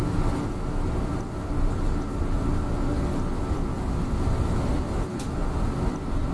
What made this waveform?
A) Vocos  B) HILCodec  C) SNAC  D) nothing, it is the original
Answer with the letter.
D